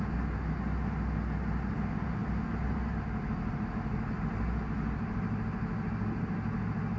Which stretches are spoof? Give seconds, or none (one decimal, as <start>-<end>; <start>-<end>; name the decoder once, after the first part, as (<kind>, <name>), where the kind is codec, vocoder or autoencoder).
none